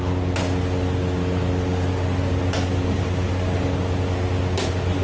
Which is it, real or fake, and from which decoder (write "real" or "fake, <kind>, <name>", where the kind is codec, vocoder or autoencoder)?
real